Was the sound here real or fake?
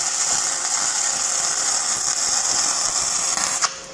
real